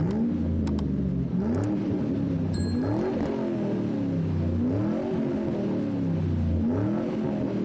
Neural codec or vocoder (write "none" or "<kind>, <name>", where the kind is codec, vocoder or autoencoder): none